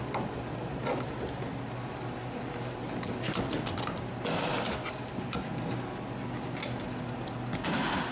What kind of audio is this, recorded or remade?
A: recorded